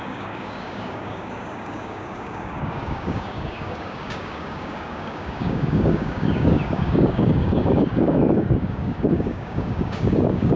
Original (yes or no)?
no